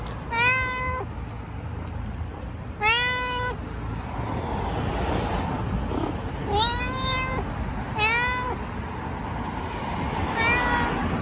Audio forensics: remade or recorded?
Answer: recorded